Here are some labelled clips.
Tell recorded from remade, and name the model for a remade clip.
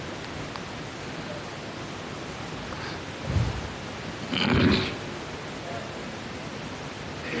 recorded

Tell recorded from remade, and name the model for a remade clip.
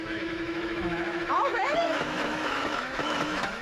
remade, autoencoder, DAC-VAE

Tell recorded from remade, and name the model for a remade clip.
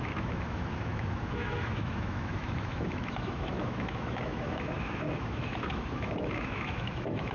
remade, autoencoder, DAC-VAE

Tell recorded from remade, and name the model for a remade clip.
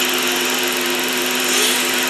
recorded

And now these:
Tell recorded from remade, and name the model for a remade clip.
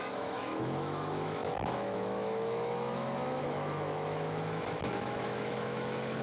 remade, autoencoder, DAC-VAE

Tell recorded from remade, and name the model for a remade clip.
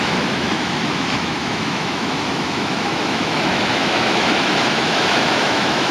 remade, autoencoder, DAC-VAE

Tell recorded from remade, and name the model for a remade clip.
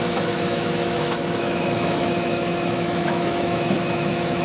remade, autoencoder, DAC-VAE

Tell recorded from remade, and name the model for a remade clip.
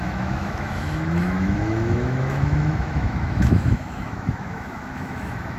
remade, autoencoder, DAC-VAE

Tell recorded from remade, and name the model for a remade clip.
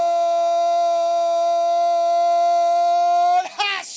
recorded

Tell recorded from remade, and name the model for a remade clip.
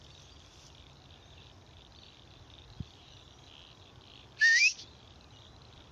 recorded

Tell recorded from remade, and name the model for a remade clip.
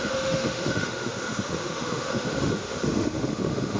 remade, autoencoder, DAC-VAE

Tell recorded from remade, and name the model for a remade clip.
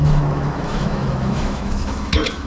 remade, autoencoder, DAC-VAE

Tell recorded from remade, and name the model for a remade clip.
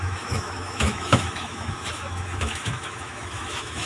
remade, autoencoder, DAC-VAE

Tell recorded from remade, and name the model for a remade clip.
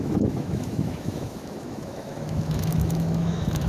remade, autoencoder, DAC-VAE